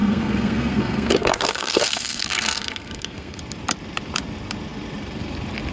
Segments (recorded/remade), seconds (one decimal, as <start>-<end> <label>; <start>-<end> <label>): 0.0-3.4 remade; 3.4-5.7 recorded